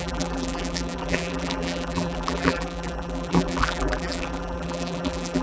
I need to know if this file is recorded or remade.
remade